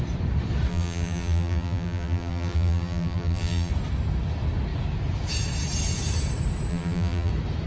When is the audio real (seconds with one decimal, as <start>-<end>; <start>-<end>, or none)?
0.0-0.7; 3.7-6.7; 7.3-7.7